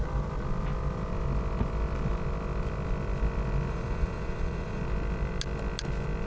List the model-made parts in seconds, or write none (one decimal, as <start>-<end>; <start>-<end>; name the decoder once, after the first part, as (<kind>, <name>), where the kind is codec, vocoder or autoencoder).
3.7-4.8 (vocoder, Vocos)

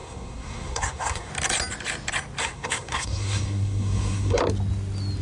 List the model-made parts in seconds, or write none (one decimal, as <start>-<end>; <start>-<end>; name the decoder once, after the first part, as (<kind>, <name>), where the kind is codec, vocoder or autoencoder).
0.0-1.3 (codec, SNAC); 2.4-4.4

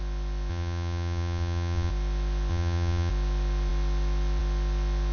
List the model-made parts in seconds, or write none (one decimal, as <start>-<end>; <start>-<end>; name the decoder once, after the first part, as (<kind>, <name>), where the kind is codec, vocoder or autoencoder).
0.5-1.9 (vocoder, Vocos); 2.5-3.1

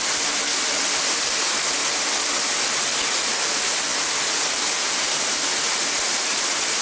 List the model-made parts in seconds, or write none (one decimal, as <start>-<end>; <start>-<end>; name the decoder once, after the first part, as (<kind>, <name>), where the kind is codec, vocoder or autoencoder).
0.5-1.1 (vocoder, BigVGAN v2); 3.9-6.8

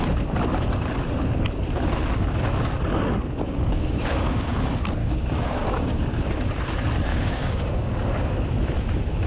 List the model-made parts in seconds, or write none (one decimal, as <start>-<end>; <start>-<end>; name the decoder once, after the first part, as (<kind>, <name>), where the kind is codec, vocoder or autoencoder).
3.5-4.4 (codec, DAC); 5.0-6.1; 7.1-8.1